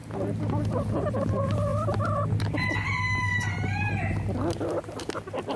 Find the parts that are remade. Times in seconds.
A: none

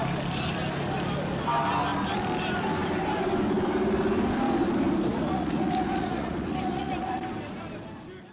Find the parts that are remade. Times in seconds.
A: 5.1-7.2

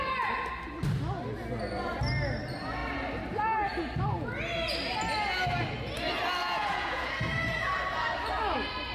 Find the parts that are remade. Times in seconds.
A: 6.4-7.1

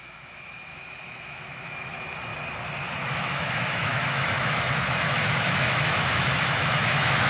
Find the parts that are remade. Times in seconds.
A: 0.0-2.3; 2.9-7.3

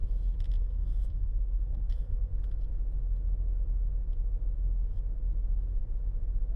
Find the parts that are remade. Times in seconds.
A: 0.6-2.3

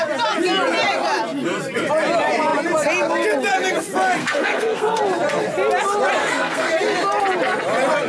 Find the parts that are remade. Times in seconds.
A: 4.2-5.0; 6.2-6.7